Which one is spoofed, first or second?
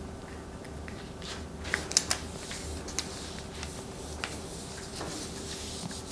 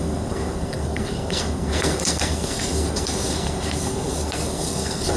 second